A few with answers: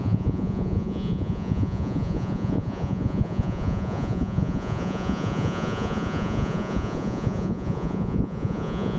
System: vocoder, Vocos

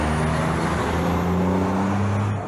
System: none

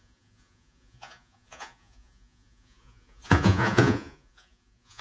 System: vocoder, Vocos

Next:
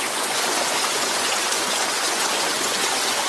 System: vocoder, Vocos